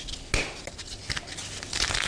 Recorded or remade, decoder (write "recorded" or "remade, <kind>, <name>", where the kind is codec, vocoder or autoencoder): recorded